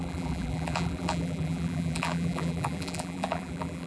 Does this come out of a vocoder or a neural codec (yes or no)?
yes